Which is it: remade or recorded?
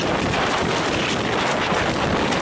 recorded